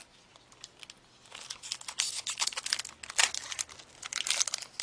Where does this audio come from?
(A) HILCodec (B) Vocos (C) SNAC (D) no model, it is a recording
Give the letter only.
D